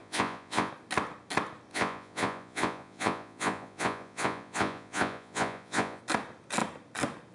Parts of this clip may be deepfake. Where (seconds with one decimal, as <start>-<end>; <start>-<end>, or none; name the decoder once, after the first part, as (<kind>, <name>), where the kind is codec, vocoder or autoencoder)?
0.0-0.7 (vocoder, Vocos); 1.7-6.0